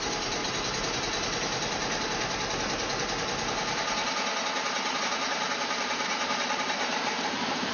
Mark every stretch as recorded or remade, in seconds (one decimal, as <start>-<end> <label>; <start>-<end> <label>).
0.0-0.4 remade; 0.4-5.0 recorded; 5.0-7.7 remade